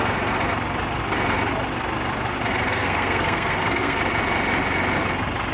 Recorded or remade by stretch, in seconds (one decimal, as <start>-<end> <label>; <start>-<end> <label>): 0.0-2.7 recorded; 2.7-4.0 remade; 4.0-5.5 recorded